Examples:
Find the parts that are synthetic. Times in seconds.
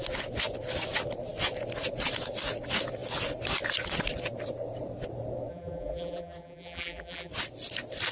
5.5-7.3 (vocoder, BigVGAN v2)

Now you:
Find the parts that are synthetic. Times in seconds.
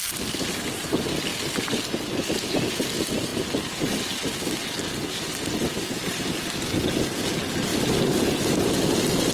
7.7-8.7 (vocoder, BigVGAN v2)